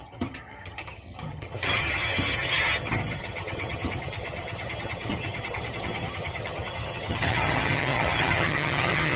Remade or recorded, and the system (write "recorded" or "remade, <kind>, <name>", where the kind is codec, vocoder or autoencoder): remade, vocoder, HiFi-GAN